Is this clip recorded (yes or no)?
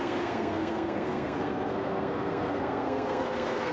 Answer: no